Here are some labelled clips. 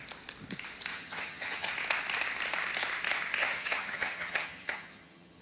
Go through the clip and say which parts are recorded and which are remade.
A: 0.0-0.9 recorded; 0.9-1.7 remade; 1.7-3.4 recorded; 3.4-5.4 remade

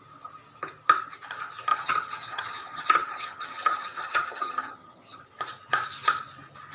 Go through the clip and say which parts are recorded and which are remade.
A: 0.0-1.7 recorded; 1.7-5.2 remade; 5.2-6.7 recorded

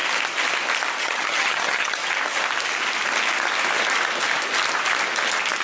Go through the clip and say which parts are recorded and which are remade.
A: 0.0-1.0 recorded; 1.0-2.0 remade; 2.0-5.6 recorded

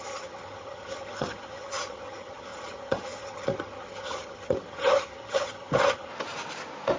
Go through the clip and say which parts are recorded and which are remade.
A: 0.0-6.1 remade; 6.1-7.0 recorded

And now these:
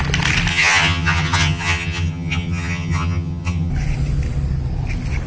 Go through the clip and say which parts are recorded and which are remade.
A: 0.0-0.5 recorded; 0.5-3.7 remade; 3.7-5.3 recorded

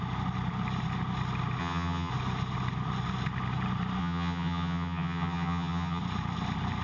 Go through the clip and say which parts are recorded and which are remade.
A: 0.0-1.6 recorded; 1.6-2.1 remade; 2.1-4.0 recorded; 4.0-6.0 remade; 6.0-6.8 recorded

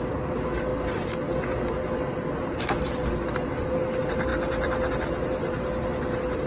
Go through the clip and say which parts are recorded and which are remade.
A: 0.0-6.5 recorded

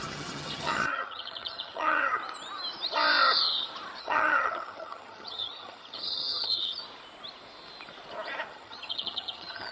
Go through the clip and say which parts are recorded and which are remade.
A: 0.0-2.2 remade; 2.2-4.0 recorded; 4.0-6.8 remade; 6.8-8.5 recorded; 8.5-9.7 remade